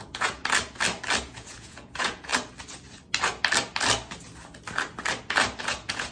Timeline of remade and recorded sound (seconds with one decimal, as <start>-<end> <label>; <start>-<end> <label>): 0.0-0.4 remade; 0.4-1.2 recorded; 1.2-2.3 remade; 2.3-5.6 recorded; 5.6-6.1 remade